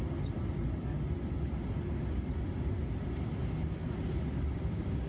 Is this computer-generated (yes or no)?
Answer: no